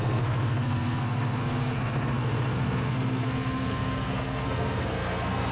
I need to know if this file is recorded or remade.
remade